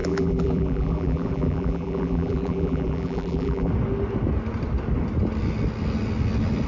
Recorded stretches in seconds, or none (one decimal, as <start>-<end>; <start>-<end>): 3.7-6.7